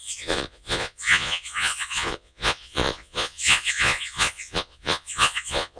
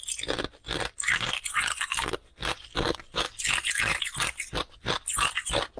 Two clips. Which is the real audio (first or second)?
second